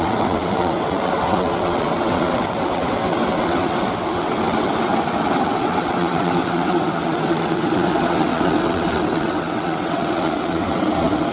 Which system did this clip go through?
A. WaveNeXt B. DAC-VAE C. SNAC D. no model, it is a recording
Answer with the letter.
A